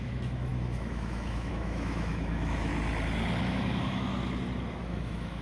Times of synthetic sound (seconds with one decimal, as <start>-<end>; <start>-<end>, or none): 0.0-2.7; 3.4-4.1; 4.7-5.4